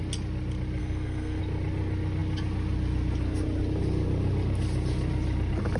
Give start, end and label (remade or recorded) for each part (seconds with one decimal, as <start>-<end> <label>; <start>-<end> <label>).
0.0-0.8 recorded; 0.8-1.4 remade; 1.4-5.8 recorded